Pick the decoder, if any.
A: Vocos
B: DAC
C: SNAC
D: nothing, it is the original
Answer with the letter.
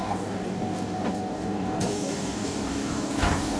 B